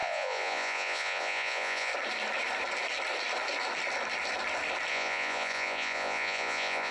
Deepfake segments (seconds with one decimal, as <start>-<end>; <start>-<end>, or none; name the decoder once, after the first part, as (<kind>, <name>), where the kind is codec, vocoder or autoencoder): 0.0-1.9 (vocoder, Vocos); 4.9-6.9